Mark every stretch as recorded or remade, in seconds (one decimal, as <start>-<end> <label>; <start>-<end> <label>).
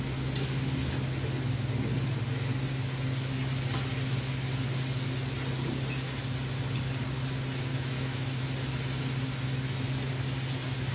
0.0-7.7 recorded; 7.7-8.4 remade; 8.4-10.9 recorded